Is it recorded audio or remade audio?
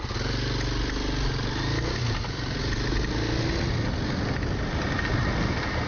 recorded